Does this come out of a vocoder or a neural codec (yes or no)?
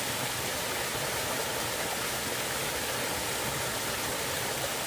no